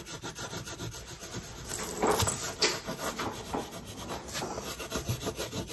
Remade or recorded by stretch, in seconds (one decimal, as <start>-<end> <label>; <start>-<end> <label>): 0.0-5.7 recorded

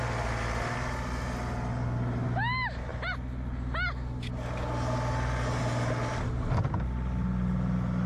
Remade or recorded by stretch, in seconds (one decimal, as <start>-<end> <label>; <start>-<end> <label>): 0.0-8.1 recorded

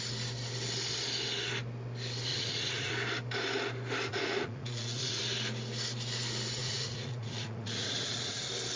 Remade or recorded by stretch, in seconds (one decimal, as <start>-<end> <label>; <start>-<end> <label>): 0.0-2.3 recorded; 2.3-2.9 remade; 2.9-4.1 recorded; 4.1-5.2 remade; 5.2-6.6 recorded; 6.6-8.4 remade; 8.4-8.8 recorded

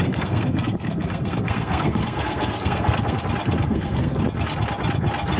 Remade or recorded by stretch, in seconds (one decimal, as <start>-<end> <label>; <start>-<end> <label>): 0.0-3.2 remade; 3.2-3.6 recorded; 3.6-4.2 remade; 4.2-5.4 recorded

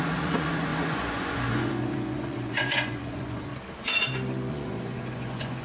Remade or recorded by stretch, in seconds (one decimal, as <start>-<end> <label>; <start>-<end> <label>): 0.0-3.5 remade; 3.5-4.5 recorded; 4.5-5.6 remade